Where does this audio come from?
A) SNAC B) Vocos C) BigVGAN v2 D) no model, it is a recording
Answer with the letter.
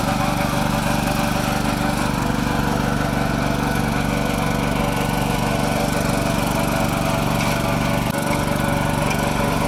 D